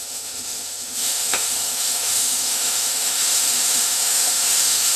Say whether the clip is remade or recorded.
remade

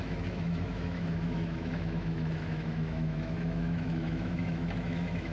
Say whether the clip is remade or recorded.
remade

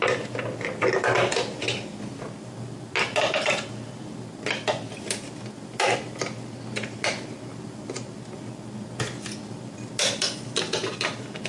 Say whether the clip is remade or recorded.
recorded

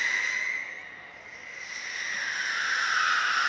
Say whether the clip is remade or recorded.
recorded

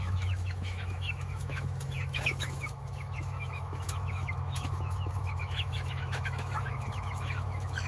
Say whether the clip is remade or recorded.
remade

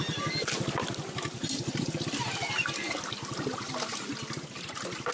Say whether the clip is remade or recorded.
recorded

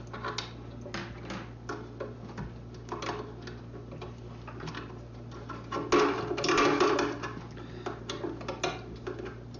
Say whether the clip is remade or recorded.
recorded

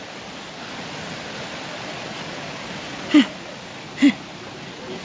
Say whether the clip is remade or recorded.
recorded